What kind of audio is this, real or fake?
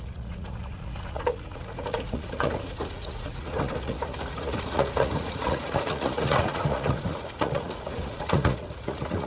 fake